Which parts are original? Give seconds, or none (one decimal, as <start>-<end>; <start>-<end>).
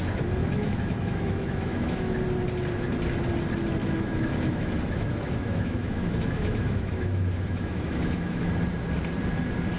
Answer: 0.0-0.4; 2.1-3.8; 8.5-9.8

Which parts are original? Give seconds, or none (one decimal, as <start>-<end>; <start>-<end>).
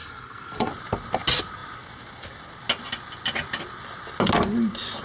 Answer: 0.7-5.0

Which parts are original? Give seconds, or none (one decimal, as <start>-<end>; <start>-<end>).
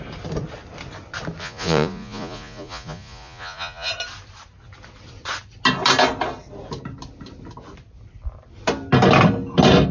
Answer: 0.0-1.4; 3.9-9.9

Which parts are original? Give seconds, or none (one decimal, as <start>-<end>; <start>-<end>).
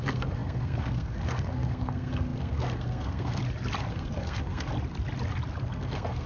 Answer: 3.4-3.9; 4.7-5.7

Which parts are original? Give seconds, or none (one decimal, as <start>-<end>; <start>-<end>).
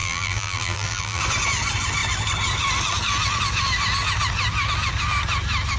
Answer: 1.2-5.8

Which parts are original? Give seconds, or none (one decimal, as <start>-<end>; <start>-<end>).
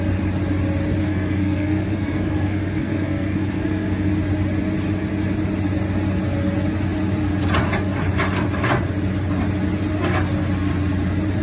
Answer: 0.0-1.0; 4.1-11.4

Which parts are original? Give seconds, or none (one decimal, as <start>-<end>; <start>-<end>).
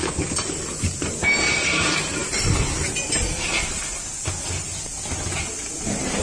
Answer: 0.0-6.2